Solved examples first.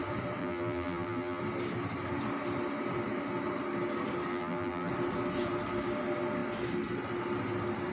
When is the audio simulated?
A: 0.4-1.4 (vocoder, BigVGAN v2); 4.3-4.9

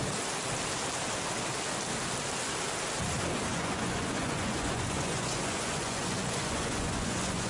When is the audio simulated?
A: 3.5-7.5 (vocoder, Vocos)

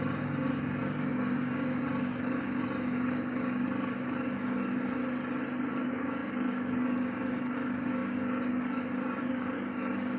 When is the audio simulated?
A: 0.0-5.0 (codec, DAC); 5.7-10.2

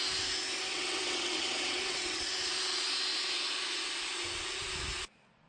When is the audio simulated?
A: 0.7-2.3 (vocoder, WaveNeXt)

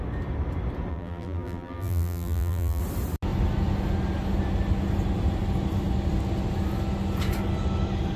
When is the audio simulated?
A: 0.9-2.8 (vocoder, BigVGAN v2)